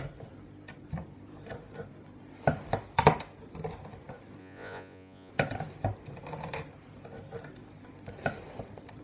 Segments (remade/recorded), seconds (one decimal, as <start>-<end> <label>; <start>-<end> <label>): 0.0-4.4 recorded; 4.4-5.3 remade; 5.3-9.0 recorded